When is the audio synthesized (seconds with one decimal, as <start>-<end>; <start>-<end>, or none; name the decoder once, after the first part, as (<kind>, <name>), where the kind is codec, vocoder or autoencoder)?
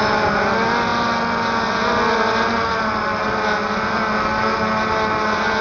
none